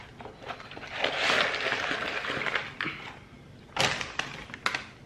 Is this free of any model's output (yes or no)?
yes